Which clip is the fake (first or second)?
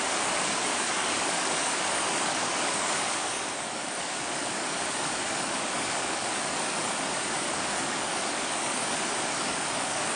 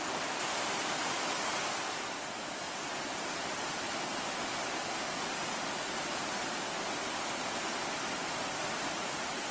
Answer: first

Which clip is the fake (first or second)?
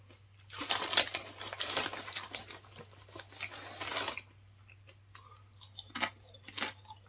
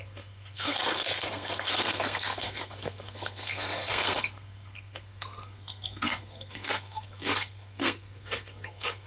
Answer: second